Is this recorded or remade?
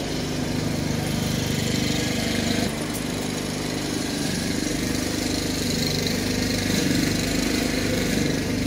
remade